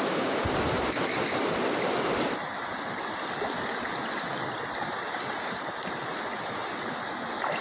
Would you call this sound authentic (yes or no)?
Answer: yes